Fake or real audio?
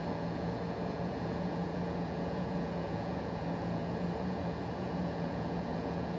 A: fake